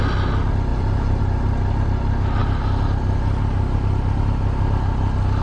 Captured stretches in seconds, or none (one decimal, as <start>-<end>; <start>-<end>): 0.0-0.7; 1.2-5.4